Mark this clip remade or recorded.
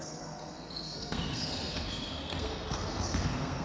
remade